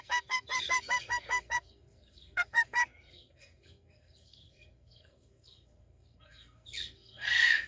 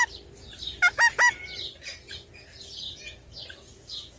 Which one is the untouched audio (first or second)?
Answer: second